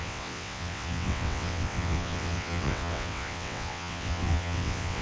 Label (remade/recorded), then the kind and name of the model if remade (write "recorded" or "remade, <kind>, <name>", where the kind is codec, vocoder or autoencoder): remade, vocoder, WaveNeXt